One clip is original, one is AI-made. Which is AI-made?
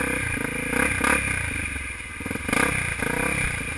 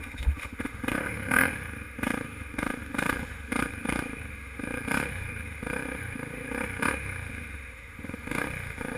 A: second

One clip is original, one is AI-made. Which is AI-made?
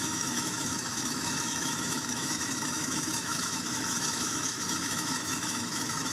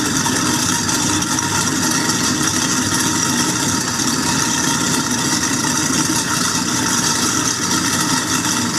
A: first